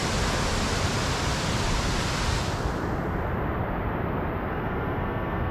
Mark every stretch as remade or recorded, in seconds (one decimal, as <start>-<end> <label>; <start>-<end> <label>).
0.0-4.5 recorded; 4.5-5.5 remade